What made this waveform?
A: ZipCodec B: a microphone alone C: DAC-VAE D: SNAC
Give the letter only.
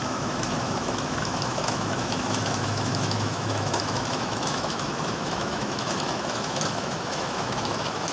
C